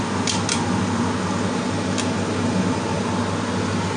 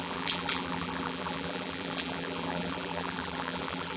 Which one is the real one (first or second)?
first